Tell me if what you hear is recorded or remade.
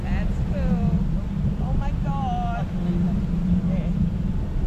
recorded